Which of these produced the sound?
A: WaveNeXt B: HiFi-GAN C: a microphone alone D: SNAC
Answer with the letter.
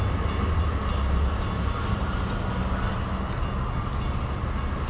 C